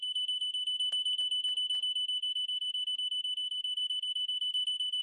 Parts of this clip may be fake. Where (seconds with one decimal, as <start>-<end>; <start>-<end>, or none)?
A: 2.2-2.9; 3.4-5.0

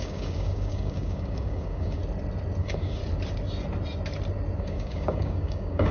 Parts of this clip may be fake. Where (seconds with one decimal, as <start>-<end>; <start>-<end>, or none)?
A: 0.0-2.0; 2.6-3.0; 4.6-5.9

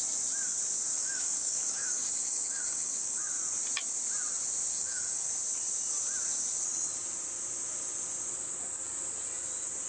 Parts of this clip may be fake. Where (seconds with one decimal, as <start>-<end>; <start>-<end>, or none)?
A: 0.9-3.3; 4.7-5.3

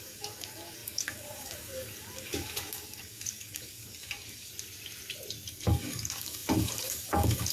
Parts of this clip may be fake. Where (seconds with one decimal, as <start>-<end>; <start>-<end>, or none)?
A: 0.0-4.5; 5.6-7.5

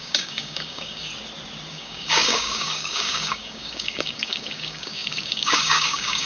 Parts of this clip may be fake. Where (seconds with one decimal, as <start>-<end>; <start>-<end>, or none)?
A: 0.0-1.1; 1.7-6.3

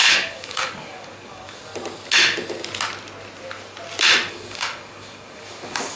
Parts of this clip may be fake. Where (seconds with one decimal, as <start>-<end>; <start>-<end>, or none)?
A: 0.0-1.7; 4.3-6.0

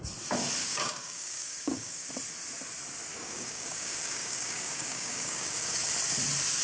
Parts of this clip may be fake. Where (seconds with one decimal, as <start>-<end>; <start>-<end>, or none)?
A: 0.6-2.1; 3.1-5.9

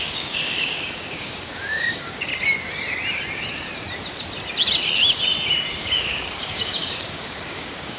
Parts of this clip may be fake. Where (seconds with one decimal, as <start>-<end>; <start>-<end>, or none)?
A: 0.0-2.3; 5.7-8.0